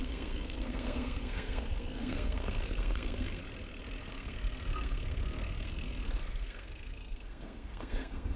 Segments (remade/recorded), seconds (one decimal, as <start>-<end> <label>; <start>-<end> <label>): 0.0-3.4 remade; 3.4-4.1 recorded; 4.1-8.4 remade